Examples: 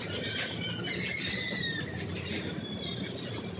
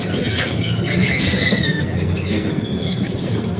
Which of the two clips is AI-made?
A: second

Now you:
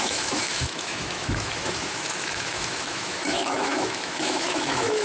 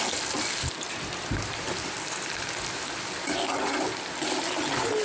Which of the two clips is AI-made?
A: first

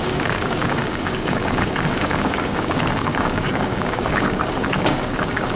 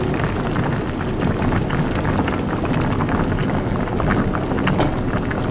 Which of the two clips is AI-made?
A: first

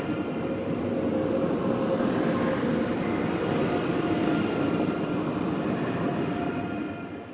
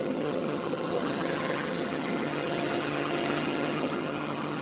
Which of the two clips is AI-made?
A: second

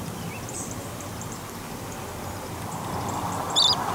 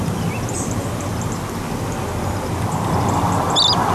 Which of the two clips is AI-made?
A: first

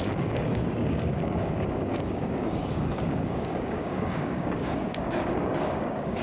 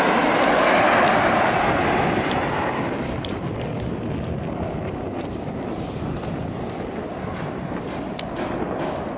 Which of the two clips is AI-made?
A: first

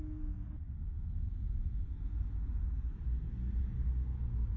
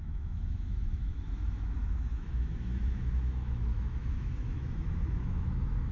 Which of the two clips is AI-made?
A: second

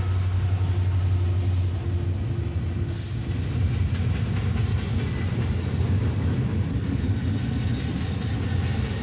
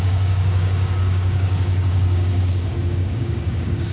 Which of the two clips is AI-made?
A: second